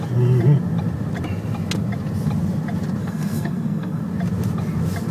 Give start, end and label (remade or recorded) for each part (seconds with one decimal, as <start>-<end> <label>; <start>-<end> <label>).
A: 0.0-3.0 recorded; 3.0-4.0 remade; 4.0-5.1 recorded